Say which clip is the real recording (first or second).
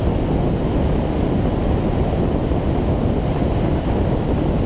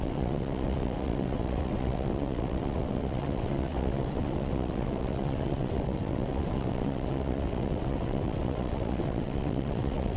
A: first